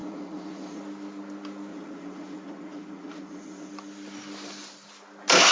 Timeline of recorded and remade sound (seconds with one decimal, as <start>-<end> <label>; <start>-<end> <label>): 0.0-0.8 remade; 0.8-1.7 recorded; 1.7-3.7 remade; 3.7-5.5 recorded